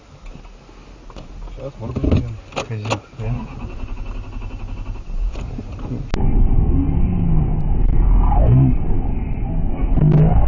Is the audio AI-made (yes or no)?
no